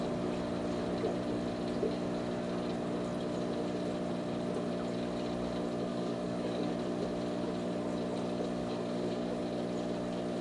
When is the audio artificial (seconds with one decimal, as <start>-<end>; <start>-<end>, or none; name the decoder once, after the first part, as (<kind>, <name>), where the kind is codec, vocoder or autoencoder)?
5.9-6.7 (codec, DAC); 8.6-9.4